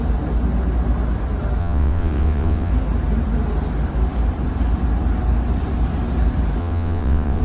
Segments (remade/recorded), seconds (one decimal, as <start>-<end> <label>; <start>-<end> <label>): 0.0-1.6 recorded; 1.6-2.7 remade; 2.7-6.6 recorded; 6.6-7.4 remade